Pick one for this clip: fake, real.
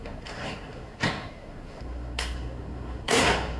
fake